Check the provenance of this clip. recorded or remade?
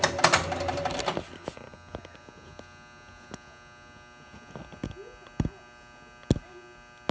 recorded